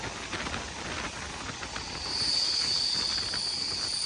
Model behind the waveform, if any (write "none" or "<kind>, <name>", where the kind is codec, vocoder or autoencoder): none